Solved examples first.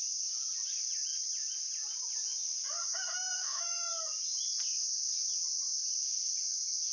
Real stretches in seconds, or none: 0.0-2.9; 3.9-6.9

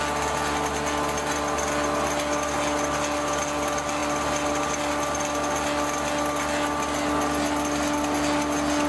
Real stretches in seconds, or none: 0.0-8.9

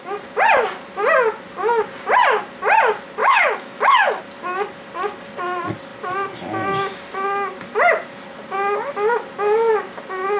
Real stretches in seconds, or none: 0.0-3.2; 4.2-10.4